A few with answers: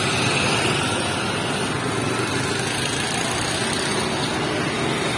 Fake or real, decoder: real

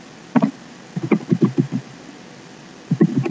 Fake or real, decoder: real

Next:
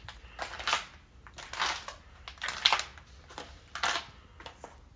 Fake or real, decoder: real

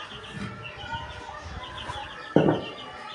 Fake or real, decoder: real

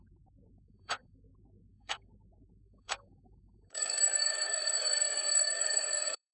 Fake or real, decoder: fake, codec, SNAC